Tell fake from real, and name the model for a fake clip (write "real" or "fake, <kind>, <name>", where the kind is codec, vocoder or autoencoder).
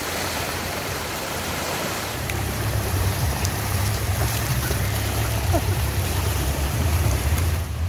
fake, vocoder, BigVGAN v2